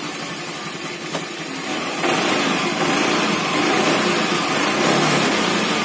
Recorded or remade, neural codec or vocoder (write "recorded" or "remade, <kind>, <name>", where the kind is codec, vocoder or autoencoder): recorded